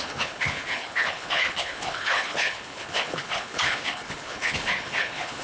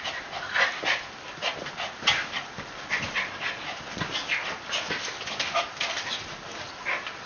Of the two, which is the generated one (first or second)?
first